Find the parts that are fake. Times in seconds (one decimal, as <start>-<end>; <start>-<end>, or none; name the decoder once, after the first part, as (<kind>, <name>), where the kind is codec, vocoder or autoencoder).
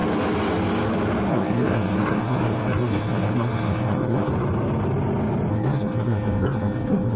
1.3-4.3 (codec, SNAC); 5.5-7.2